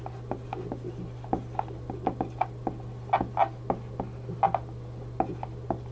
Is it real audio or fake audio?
real